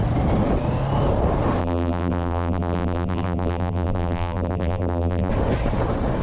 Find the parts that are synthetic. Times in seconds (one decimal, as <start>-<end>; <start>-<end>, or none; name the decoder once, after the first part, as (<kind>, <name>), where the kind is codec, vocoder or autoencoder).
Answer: 1.6-5.3 (vocoder, BigVGAN v2)